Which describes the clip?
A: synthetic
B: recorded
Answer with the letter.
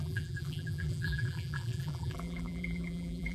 A